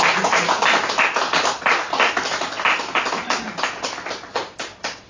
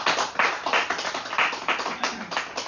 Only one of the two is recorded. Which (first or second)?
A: first